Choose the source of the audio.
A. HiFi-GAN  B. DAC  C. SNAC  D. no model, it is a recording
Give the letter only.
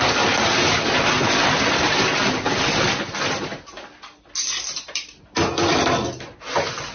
D